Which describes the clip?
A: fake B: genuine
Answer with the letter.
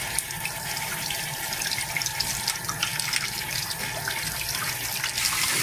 B